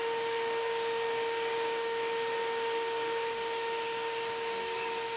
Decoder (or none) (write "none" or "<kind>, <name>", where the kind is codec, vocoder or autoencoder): codec, DAC